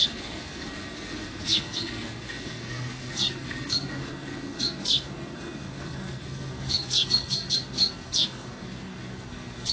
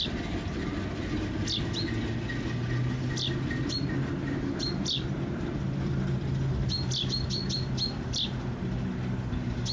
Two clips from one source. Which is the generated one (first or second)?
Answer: first